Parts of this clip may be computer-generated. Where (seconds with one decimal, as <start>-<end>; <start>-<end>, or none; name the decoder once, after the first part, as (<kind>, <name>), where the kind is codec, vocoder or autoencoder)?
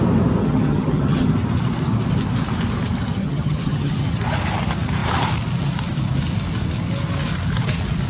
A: 0.4-1.3 (vocoder, HiFi-GAN); 3.2-4.2